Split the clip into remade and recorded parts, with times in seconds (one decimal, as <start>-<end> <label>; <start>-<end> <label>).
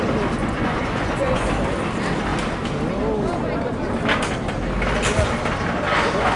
0.0-0.4 recorded; 0.4-1.5 remade; 1.5-6.4 recorded